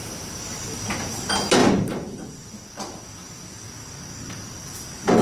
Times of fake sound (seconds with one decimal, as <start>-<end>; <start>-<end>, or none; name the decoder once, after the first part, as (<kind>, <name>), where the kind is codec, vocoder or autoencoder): 0.0-1.1 (vocoder, BigVGAN v2); 1.6-2.3